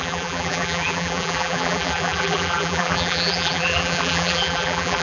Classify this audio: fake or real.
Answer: fake